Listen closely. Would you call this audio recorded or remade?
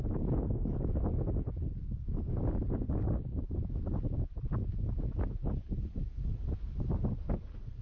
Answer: recorded